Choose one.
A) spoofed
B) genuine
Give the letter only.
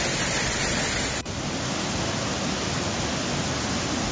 B